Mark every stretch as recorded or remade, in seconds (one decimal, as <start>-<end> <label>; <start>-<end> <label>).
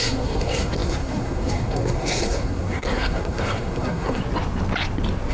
0.0-4.2 remade; 4.2-5.3 recorded